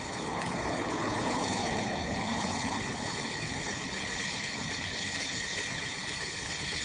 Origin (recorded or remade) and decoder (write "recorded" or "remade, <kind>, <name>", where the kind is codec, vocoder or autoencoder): remade, codec, HILCodec